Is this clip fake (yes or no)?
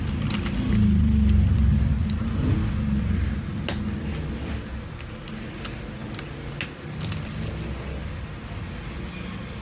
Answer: no